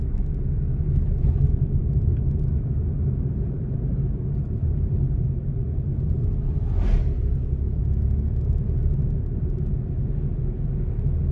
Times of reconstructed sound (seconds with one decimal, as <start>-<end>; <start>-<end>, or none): none